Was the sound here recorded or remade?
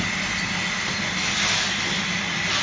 recorded